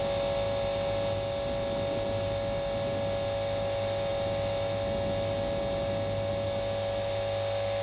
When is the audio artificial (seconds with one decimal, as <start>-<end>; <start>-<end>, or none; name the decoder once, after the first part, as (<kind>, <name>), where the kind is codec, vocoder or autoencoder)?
none